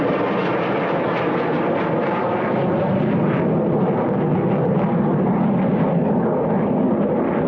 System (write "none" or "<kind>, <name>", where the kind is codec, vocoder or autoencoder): none